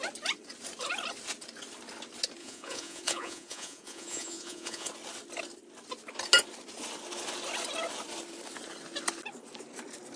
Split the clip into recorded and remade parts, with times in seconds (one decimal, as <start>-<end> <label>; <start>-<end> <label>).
0.0-2.4 recorded; 2.4-4.9 remade; 4.9-10.2 recorded